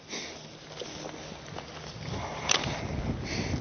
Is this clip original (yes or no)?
yes